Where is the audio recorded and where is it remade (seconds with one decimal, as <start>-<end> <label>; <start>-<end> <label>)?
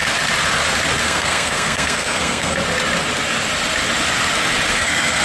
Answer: 0.0-1.0 recorded; 1.0-2.6 remade; 2.6-4.7 recorded; 4.7-5.2 remade